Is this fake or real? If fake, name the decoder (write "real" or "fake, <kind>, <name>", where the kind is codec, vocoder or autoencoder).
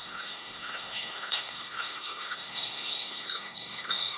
fake, codec, SNAC